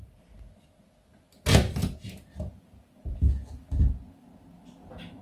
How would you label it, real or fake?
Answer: real